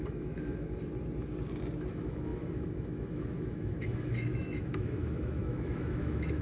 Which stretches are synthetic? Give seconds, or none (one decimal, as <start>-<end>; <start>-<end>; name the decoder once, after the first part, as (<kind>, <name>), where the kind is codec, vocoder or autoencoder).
0.0-0.9 (autoencoder, DAC-VAE); 1.9-6.4